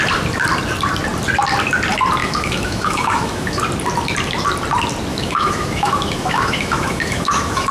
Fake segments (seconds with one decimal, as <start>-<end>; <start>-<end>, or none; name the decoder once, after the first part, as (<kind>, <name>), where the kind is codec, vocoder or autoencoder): 2.2-3.6 (autoencoder, DAC-VAE); 5.1-7.7